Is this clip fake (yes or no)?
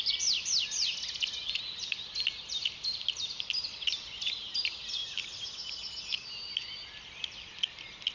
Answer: no